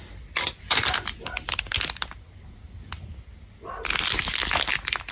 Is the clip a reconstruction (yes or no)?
no